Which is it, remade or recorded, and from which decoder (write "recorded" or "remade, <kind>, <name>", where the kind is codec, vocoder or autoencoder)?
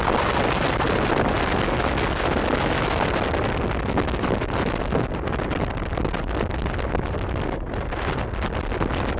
recorded